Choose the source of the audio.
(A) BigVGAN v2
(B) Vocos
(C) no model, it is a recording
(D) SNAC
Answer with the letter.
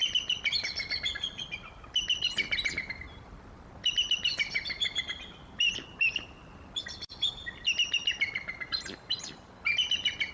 C